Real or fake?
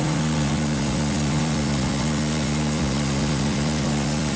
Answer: fake